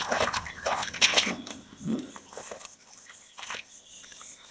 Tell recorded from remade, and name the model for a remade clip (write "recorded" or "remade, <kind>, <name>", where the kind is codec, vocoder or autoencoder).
remade, codec, ZipCodec